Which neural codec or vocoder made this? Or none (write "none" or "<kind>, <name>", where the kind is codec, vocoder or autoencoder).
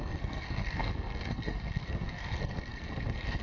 codec, SNAC